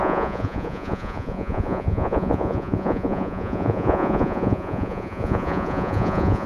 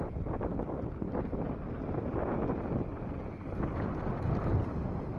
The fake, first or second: first